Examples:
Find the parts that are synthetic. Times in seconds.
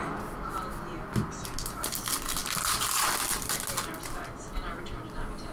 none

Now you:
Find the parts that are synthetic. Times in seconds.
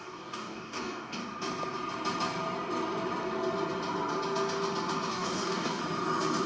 0.0-1.2 (codec, DAC); 5.1-5.8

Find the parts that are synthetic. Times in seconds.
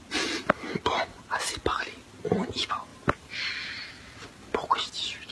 2.9-3.4 (vocoder, BigVGAN v2)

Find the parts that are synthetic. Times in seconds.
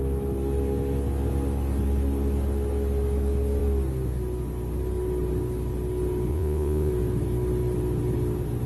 6.3-6.9 (vocoder, Vocos)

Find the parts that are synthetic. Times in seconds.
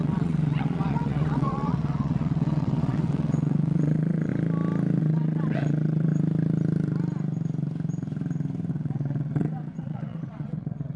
0.0-4.3 (vocoder, WaveNeXt); 5.0-6.1; 8.7-11.0